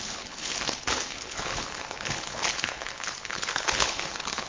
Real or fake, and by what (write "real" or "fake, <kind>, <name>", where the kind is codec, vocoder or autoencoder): fake, codec, HILCodec